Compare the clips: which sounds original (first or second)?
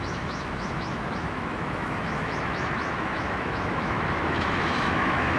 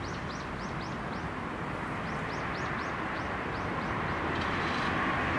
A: second